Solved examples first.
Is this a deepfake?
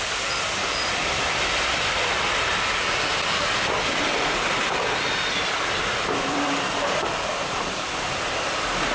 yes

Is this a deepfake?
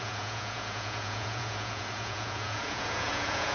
yes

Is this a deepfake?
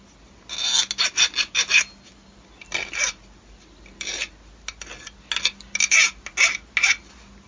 no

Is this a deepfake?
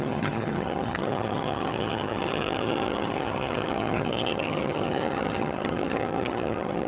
yes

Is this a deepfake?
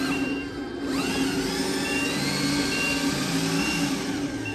no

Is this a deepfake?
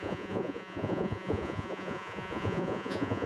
yes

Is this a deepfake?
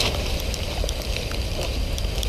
no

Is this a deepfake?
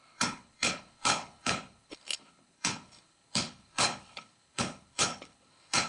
yes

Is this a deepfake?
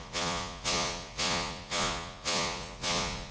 yes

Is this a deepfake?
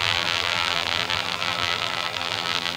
yes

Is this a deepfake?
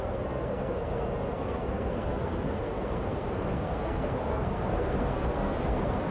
yes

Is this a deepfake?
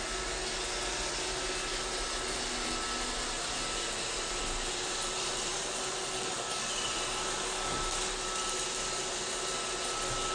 no